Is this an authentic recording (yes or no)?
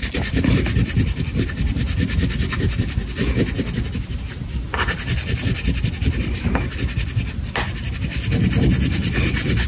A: yes